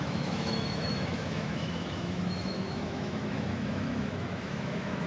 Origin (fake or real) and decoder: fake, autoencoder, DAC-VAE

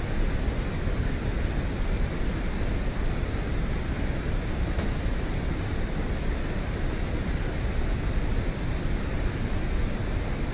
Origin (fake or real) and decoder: real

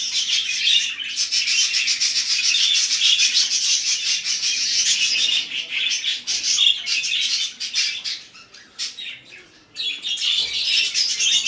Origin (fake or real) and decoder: real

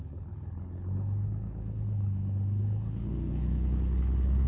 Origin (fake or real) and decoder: fake, codec, HILCodec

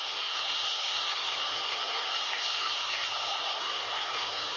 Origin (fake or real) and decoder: fake, codec, SNAC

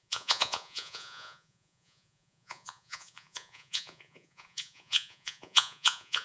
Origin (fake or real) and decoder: fake, vocoder, Vocos